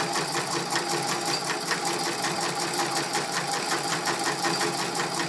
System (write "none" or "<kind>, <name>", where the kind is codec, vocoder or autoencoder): none